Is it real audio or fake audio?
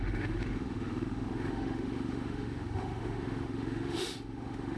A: fake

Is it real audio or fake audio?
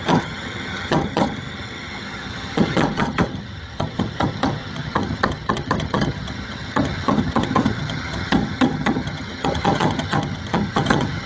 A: fake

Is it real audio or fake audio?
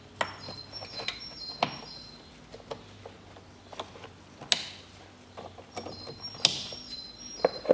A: real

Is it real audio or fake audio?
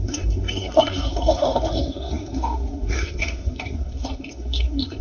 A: fake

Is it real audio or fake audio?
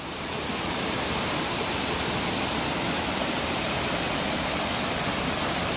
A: real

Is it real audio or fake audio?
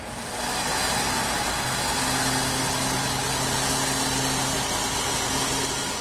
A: real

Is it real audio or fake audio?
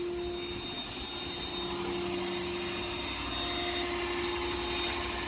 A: real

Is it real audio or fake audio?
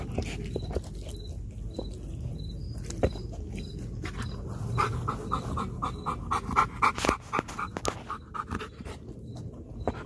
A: real